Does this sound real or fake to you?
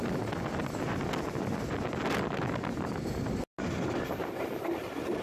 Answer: real